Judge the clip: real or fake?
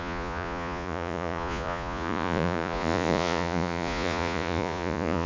fake